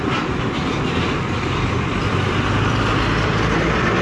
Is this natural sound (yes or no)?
no